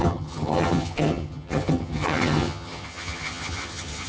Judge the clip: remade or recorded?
remade